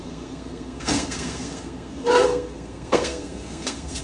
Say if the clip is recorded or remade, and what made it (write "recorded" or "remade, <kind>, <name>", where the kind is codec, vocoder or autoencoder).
remade, codec, SNAC